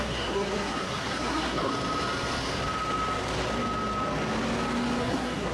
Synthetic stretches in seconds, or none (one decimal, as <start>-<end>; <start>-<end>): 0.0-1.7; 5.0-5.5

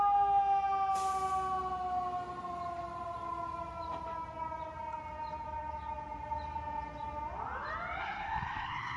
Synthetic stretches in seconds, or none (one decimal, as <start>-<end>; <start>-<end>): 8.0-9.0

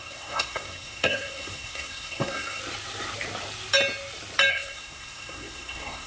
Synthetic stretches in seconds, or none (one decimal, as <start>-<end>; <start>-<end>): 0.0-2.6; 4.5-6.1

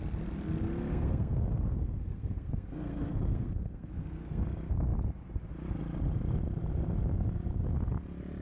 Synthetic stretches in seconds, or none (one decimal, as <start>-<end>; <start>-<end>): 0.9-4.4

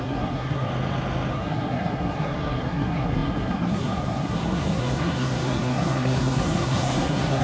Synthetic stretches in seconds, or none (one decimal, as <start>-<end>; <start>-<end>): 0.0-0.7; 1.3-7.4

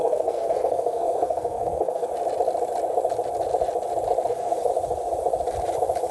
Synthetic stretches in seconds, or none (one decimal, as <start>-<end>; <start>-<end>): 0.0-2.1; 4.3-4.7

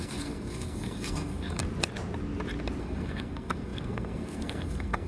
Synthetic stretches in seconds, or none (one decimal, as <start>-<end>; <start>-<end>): 0.0-1.6; 2.8-5.1